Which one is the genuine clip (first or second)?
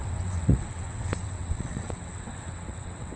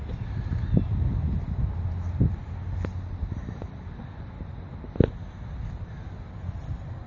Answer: second